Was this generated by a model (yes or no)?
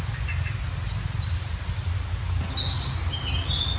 no